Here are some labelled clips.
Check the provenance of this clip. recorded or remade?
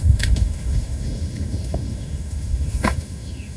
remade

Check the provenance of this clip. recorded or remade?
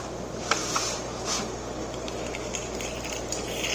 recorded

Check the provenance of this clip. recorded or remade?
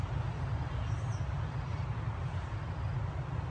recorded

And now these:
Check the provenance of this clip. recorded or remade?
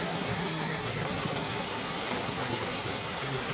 remade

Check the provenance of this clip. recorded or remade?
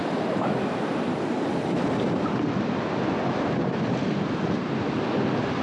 recorded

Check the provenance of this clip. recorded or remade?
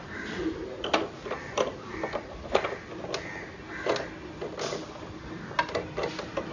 recorded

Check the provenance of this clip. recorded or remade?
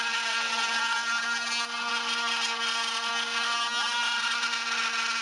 recorded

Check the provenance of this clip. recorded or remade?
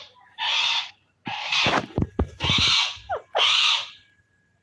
remade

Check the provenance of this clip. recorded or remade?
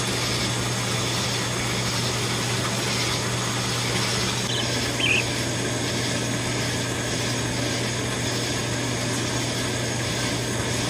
recorded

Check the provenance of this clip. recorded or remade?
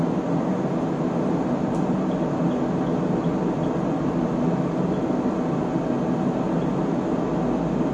recorded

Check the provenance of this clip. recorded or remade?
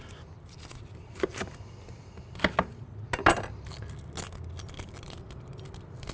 recorded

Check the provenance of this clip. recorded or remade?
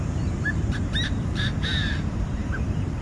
remade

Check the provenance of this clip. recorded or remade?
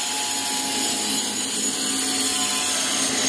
recorded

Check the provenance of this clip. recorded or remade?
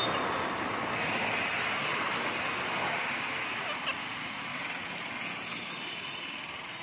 recorded